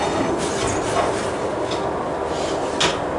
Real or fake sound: real